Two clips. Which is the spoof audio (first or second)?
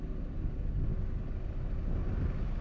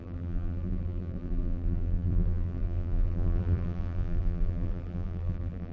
second